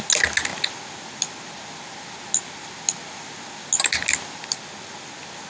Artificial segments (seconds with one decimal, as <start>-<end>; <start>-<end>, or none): none